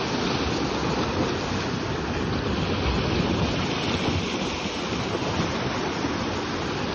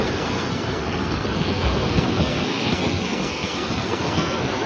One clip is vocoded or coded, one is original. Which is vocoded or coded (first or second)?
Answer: second